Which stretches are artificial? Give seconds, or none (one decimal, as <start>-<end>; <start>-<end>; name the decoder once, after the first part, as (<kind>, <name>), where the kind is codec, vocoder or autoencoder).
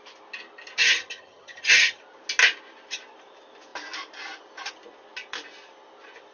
0.8-2.0 (vocoder, HiFi-GAN)